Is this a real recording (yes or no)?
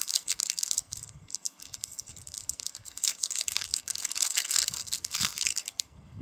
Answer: no